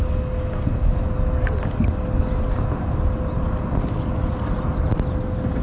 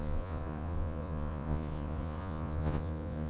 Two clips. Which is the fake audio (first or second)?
second